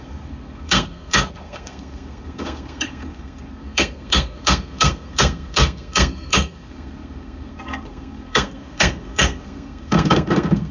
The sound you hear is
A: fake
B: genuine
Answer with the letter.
A